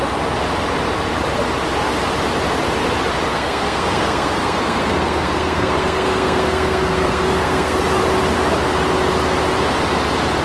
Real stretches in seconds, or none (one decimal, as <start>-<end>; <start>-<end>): 0.0-3.3; 7.8-10.4